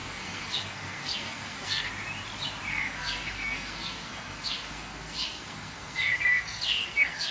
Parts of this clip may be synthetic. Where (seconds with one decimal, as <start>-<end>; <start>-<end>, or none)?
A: 0.0-1.9; 2.7-7.3